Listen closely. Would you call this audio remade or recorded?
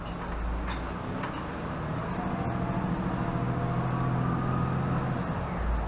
recorded